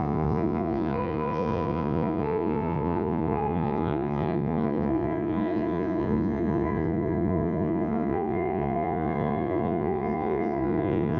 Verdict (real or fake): fake